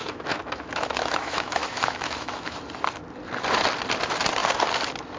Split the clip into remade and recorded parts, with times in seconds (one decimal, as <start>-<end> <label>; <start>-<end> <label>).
0.0-2.6 remade; 2.6-5.2 recorded